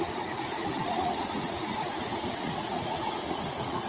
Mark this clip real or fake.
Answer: fake